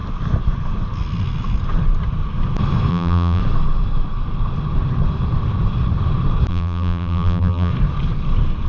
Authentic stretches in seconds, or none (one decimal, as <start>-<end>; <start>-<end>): 0.0-2.9; 3.4-6.5; 7.7-8.7